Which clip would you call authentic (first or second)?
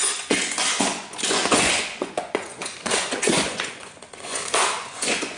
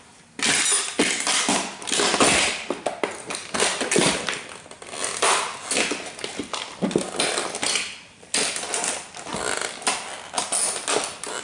second